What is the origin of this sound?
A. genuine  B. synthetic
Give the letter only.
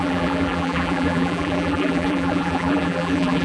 B